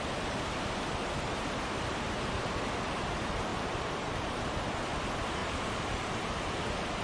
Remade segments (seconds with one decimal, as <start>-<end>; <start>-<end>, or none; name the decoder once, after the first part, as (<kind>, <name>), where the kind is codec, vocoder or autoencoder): 3.5-4.5 (vocoder, BigVGAN v2); 5.4-6.5